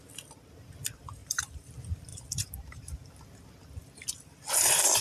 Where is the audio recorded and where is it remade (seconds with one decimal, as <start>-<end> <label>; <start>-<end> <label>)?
0.0-1.2 recorded; 1.2-1.7 remade; 1.7-2.1 recorded; 2.1-3.5 remade; 3.5-5.0 recorded